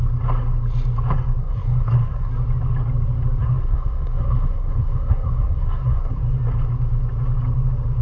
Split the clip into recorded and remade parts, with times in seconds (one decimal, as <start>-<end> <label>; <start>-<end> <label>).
0.0-1.4 recorded; 1.4-2.3 remade; 2.3-3.4 recorded; 3.4-6.2 remade; 6.2-8.0 recorded